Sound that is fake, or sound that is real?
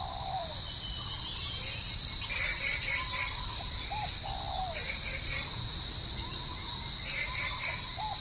fake